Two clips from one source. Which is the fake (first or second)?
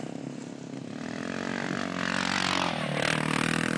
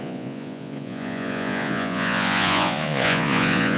second